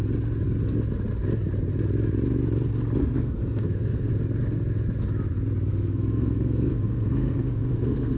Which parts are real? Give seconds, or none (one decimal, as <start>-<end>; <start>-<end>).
0.0-3.0; 4.1-5.7